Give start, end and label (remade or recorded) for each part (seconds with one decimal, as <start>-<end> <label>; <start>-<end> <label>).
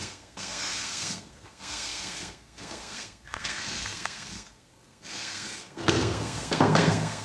0.0-7.2 remade